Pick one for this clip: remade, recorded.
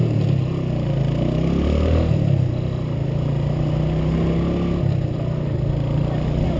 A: recorded